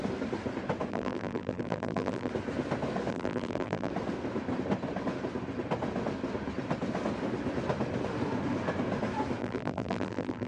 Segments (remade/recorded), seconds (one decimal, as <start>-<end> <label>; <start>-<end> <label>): 0.0-0.9 recorded; 0.9-2.3 remade; 2.3-3.1 recorded; 3.1-3.9 remade; 3.9-9.4 recorded; 9.4-10.5 remade